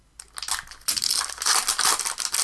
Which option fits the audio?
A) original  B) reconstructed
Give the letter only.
A